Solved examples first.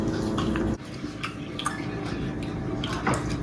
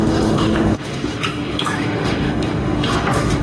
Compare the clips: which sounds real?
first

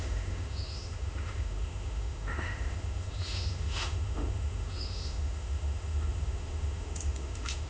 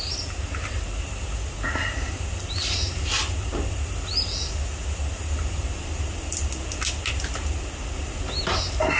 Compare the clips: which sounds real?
second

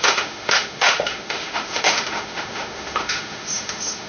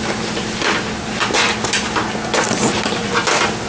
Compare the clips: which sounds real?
second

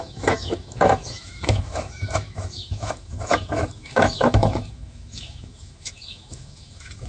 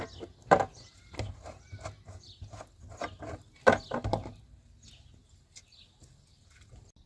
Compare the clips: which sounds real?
second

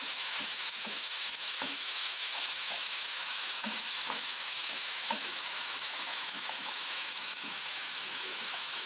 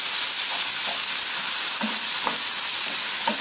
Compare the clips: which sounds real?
second